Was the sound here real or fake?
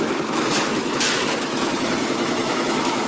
fake